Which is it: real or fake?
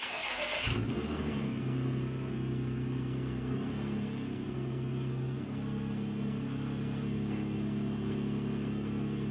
fake